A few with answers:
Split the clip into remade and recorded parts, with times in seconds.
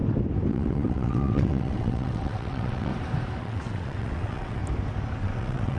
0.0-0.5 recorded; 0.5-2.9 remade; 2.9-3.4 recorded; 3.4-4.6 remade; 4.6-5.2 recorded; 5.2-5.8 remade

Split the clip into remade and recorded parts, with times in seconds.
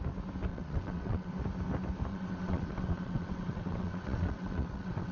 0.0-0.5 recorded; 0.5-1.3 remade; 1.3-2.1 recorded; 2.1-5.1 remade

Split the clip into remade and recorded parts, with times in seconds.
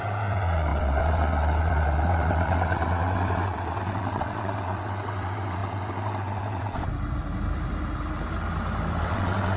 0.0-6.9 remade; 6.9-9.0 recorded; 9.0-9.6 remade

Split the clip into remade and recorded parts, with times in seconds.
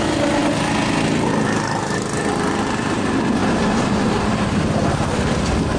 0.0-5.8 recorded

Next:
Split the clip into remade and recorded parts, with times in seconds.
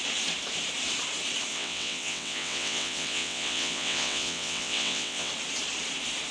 0.0-1.5 recorded; 1.5-5.3 remade; 5.3-6.3 recorded